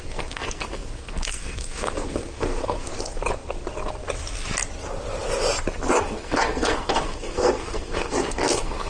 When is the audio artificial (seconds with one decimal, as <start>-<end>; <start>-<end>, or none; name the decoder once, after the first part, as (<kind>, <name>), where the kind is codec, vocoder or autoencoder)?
0.0-2.9 (codec, SNAC); 6.0-8.9